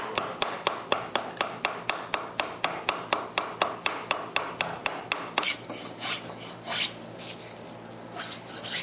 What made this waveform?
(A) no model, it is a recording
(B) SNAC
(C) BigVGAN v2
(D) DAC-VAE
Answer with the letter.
A